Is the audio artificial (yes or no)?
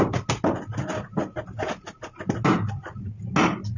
no